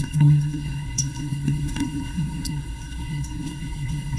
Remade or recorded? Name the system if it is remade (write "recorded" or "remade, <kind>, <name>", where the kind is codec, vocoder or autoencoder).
remade, codec, SNAC